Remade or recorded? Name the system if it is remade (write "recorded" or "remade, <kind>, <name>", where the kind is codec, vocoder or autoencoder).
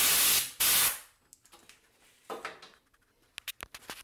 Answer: recorded